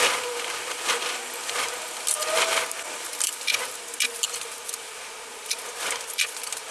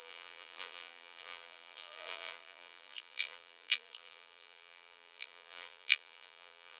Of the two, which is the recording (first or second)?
first